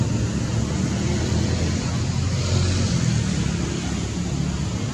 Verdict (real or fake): real